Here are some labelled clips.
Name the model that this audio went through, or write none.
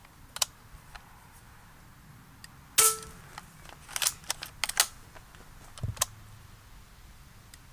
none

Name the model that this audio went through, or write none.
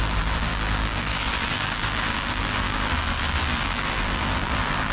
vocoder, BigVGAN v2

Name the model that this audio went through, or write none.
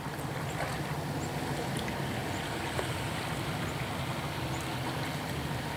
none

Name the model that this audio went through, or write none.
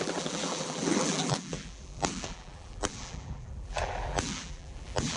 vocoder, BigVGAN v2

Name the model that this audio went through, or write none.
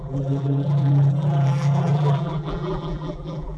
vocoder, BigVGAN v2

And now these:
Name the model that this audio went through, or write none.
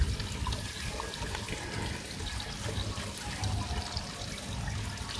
none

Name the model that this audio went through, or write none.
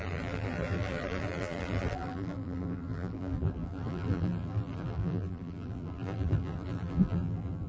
vocoder, BigVGAN v2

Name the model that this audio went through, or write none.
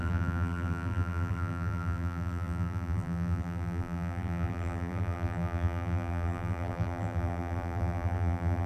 vocoder, BigVGAN v2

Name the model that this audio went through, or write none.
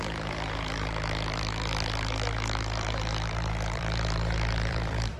vocoder, BigVGAN v2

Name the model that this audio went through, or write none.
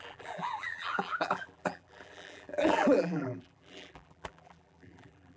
vocoder, BigVGAN v2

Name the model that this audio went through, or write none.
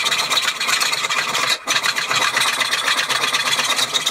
vocoder, BigVGAN v2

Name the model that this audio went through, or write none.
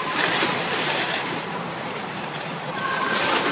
vocoder, BigVGAN v2